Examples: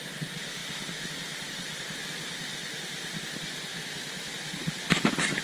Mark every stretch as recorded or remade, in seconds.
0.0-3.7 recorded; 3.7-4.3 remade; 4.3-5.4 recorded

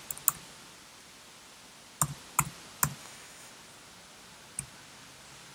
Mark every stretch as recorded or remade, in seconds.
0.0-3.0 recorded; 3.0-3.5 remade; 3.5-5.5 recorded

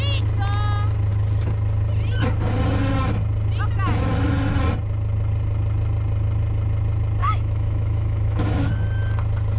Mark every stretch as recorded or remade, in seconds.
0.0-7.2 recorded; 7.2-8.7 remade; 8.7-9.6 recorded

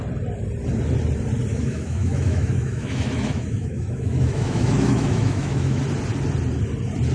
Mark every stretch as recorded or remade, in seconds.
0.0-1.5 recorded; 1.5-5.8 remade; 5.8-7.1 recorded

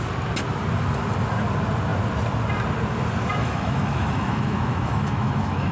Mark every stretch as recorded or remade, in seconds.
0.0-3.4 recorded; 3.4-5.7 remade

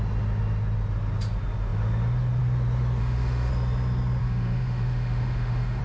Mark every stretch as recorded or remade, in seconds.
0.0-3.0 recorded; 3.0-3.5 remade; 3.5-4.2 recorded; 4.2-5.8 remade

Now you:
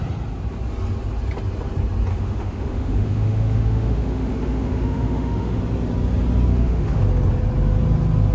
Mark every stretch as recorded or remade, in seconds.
0.0-2.1 recorded; 2.1-5.6 remade; 5.6-6.5 recorded; 6.5-7.0 remade; 7.0-8.3 recorded